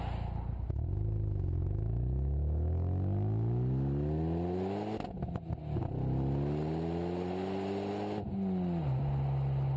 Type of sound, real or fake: real